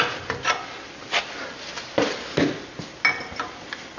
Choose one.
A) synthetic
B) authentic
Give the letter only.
B